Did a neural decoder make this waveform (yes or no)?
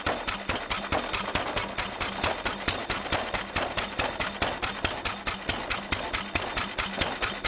no